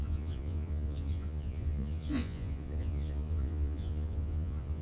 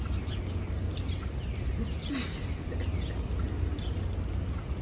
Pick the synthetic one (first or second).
first